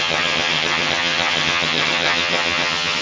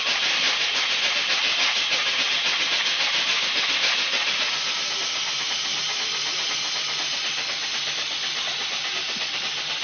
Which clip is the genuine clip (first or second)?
second